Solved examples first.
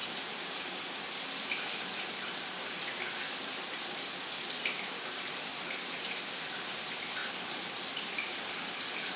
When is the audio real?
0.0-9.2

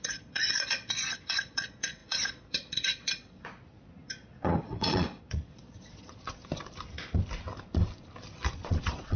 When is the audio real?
6.4-8.5

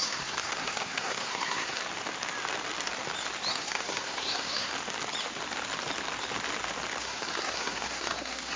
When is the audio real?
1.8-3.5; 4.7-7.0

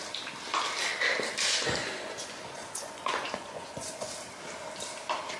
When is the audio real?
0.0-1.8; 4.1-5.4